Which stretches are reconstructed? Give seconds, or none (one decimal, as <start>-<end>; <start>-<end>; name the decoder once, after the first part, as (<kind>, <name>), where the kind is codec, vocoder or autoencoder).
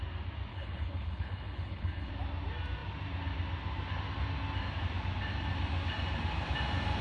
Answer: 0.5-2.1 (codec, HILCodec)